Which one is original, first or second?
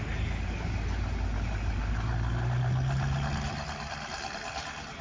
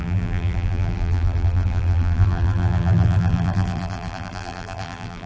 first